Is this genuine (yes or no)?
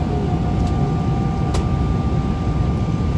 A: yes